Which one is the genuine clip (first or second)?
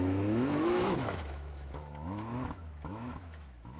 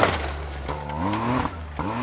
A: second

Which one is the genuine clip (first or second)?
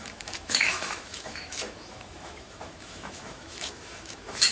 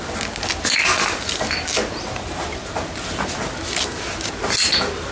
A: second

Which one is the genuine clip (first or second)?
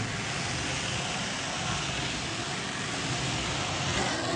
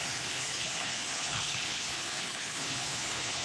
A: first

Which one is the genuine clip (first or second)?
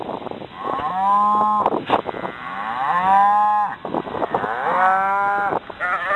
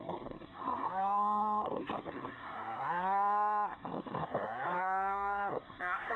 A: first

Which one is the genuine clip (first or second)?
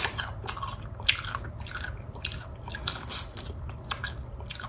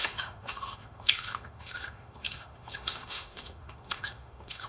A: first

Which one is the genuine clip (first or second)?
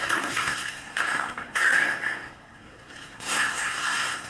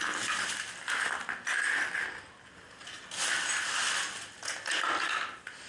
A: second